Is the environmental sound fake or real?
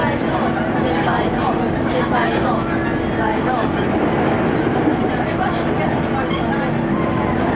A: real